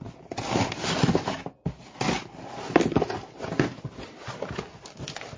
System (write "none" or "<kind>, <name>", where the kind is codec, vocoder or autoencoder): none